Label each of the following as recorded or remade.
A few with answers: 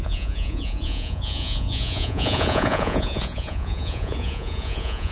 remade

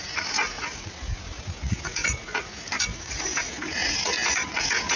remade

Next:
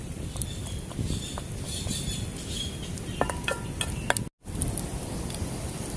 recorded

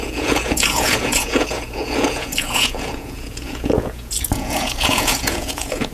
remade